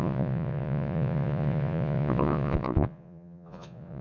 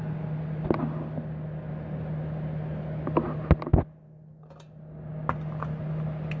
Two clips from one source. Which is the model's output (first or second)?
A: first